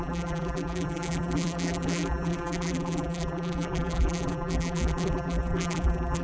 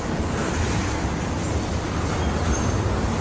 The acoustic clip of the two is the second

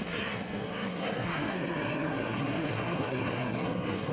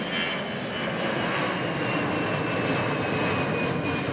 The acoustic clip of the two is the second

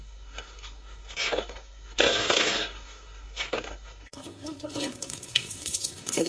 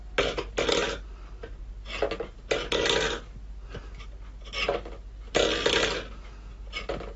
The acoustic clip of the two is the second